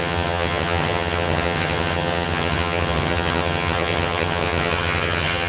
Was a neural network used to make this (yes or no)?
yes